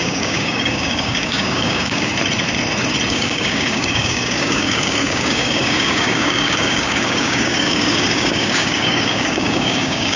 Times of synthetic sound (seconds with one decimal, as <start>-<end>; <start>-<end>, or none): 0.0-2.1; 3.1-10.2